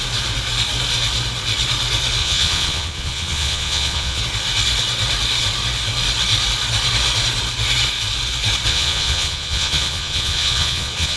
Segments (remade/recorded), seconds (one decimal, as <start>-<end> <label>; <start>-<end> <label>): 0.0-2.2 recorded; 2.2-4.2 remade; 4.2-8.7 recorded; 8.7-11.2 remade